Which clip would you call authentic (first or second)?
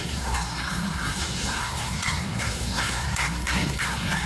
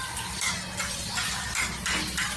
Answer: second